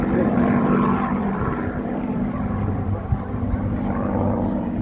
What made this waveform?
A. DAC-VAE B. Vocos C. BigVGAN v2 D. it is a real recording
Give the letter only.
C